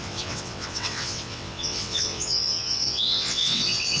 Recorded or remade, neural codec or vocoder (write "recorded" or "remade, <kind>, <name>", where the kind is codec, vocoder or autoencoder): remade, vocoder, WaveNeXt